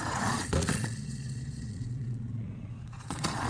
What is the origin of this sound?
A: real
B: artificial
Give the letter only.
B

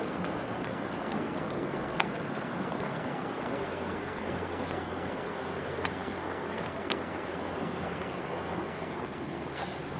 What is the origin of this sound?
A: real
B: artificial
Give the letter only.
B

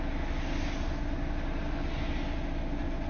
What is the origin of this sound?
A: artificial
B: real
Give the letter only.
B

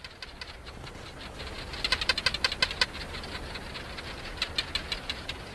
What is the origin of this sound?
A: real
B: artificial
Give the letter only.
A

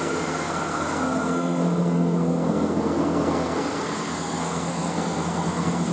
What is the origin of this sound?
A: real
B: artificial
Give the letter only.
B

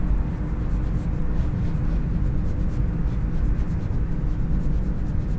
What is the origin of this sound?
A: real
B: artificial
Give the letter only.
A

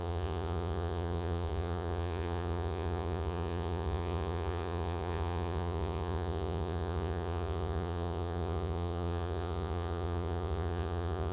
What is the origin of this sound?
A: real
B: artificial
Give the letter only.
B